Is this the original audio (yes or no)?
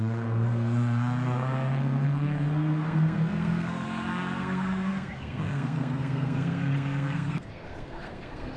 no